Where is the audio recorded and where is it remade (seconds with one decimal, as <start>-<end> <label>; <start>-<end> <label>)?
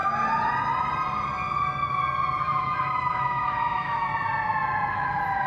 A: 0.0-2.4 recorded; 2.4-4.1 remade; 4.1-4.9 recorded; 4.9-5.5 remade